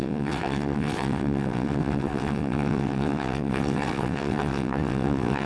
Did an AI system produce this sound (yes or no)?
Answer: yes